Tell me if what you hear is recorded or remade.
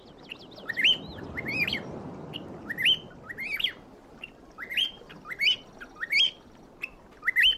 recorded